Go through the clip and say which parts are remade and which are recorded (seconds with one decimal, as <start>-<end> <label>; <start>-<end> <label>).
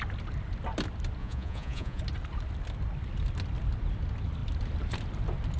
0.0-1.2 recorded; 1.2-2.0 remade; 2.0-5.6 recorded